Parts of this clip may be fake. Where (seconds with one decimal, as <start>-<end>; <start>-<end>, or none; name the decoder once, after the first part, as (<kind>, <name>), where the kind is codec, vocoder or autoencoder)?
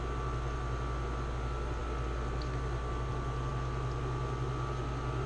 none